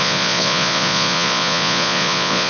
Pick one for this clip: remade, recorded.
remade